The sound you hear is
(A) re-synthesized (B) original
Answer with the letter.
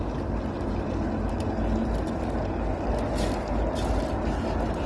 B